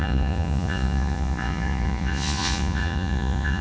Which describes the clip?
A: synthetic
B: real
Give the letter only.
A